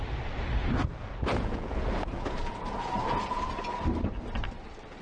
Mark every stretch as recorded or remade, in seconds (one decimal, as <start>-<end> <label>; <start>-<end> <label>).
0.0-0.6 recorded; 0.6-3.6 remade; 3.6-5.0 recorded